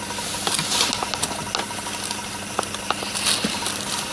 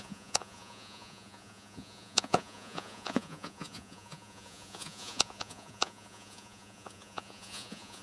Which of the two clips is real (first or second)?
first